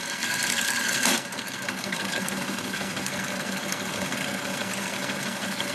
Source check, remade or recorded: remade